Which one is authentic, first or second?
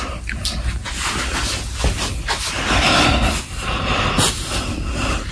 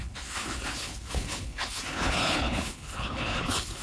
first